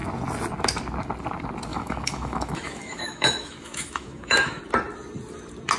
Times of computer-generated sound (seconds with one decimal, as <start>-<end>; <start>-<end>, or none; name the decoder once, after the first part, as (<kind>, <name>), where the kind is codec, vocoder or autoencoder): 1.7-4.6 (autoencoder, DAC-VAE)